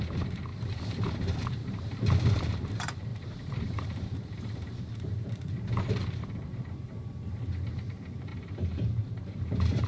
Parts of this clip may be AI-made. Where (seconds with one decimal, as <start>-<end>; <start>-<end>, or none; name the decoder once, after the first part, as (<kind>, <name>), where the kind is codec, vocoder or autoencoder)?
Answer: 0.0-9.9 (vocoder, BigVGAN v2)